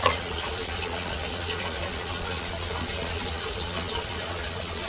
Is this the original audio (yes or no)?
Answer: no